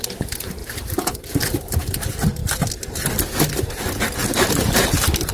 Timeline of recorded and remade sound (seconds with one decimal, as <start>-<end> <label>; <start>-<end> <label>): 0.0-0.6 recorded; 0.6-1.8 remade; 1.8-4.2 recorded; 4.2-5.3 remade